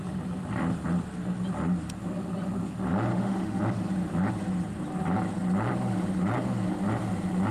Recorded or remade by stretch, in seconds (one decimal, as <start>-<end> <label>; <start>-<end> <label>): 0.0-3.1 recorded; 3.1-3.6 remade; 3.6-7.5 recorded